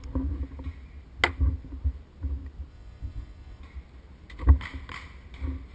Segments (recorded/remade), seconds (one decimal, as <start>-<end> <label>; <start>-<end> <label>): 0.0-2.7 recorded; 2.7-3.6 remade; 3.6-5.7 recorded